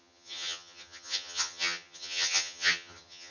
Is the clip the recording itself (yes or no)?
no